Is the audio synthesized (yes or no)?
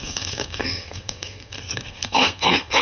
yes